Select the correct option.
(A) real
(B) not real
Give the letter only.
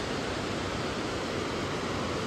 A